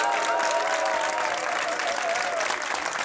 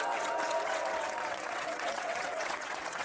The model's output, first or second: second